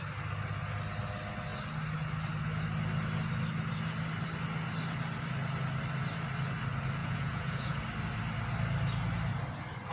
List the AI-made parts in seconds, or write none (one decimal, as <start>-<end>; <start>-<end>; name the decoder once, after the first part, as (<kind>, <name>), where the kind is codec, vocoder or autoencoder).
7.0-7.8 (vocoder, Vocos)